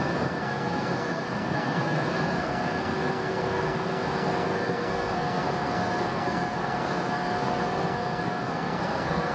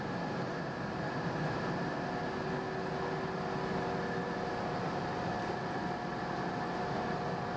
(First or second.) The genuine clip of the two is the second